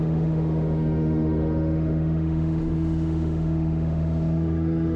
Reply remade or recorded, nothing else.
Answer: remade